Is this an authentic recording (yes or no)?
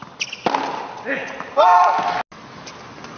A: yes